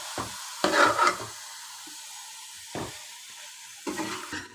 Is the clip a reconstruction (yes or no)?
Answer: no